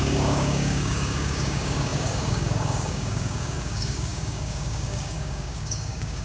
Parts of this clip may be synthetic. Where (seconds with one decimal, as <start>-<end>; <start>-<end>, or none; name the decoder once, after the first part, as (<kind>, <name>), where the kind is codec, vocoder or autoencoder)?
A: 0.0-6.2 (codec, DAC)